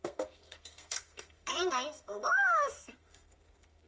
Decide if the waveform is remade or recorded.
remade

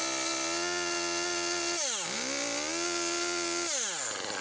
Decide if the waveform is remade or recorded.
recorded